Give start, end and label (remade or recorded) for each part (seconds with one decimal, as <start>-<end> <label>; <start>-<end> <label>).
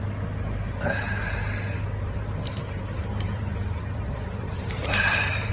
0.0-2.0 recorded; 2.0-5.5 remade